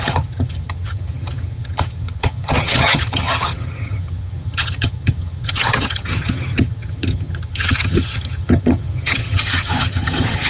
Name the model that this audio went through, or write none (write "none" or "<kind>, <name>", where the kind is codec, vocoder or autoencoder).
vocoder, HiFi-GAN